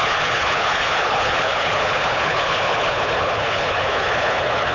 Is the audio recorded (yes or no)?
no